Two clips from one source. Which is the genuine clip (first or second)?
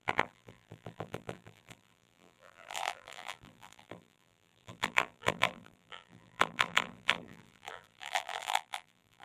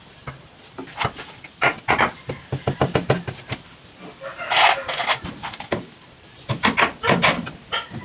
second